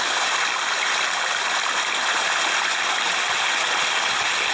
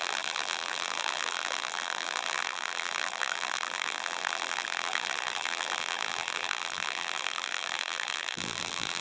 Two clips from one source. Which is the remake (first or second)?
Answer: second